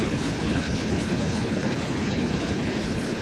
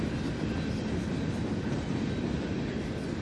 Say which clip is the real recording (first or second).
second